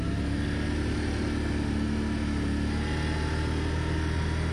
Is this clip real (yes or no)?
yes